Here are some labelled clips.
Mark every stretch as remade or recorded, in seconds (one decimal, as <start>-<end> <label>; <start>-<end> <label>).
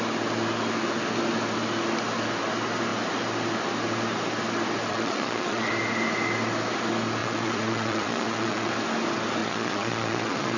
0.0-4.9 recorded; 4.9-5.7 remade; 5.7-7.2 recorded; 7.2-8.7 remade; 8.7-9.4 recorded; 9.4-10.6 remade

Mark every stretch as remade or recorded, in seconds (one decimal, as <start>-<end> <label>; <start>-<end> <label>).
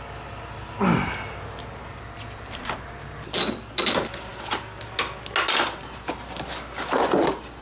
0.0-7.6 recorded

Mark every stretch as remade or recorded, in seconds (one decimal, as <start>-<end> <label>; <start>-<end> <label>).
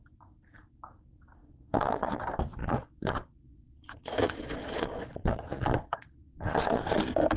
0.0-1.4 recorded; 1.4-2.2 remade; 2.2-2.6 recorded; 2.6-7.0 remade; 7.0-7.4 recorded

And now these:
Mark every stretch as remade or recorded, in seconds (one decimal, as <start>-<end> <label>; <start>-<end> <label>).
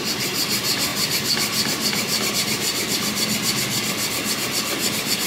0.0-5.3 recorded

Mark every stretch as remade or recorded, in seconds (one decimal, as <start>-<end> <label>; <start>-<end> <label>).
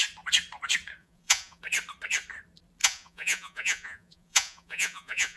0.0-1.0 recorded; 1.0-1.6 remade; 1.6-2.8 recorded; 2.8-5.4 remade